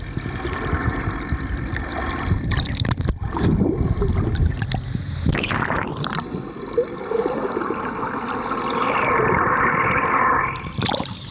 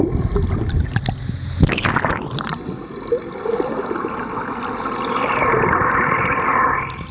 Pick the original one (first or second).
second